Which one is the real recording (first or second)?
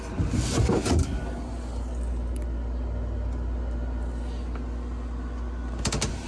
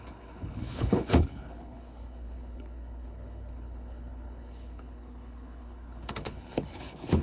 first